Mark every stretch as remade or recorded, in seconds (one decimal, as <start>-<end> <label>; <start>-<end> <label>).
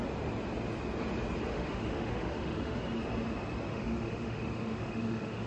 0.0-1.5 recorded; 1.5-2.8 remade; 2.8-3.7 recorded; 3.7-5.5 remade